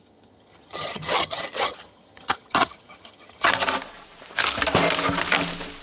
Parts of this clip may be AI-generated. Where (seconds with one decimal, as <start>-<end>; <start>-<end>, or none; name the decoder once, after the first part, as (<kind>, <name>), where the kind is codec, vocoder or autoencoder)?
0.0-3.5 (vocoder, HiFi-GAN)